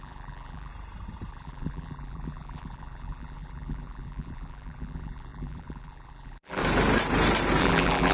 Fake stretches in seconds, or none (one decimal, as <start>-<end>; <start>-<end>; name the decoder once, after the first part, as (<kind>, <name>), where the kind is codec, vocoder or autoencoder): 0.0-0.7 (vocoder, BigVGAN v2); 1.3-6.6; 7.6-8.1